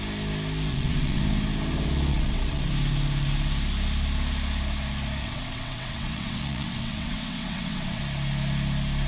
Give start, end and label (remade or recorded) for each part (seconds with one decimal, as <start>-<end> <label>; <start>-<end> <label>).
0.0-0.7 recorded; 0.7-1.2 remade; 1.2-2.1 recorded; 2.1-2.7 remade; 2.7-5.2 recorded; 5.2-8.0 remade; 8.0-9.1 recorded